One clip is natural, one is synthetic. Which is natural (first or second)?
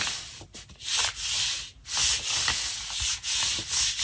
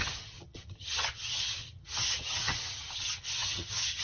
first